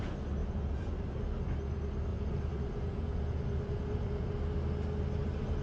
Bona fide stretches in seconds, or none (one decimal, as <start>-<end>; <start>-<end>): 0.0-0.4; 1.0-2.1; 4.3-5.6